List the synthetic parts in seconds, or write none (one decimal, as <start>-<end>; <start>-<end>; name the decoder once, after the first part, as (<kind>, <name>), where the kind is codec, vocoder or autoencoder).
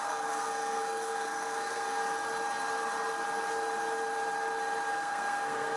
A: 0.0-2.0 (codec, SNAC); 4.9-5.8